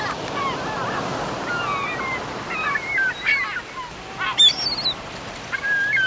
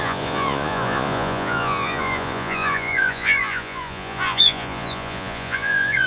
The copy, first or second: second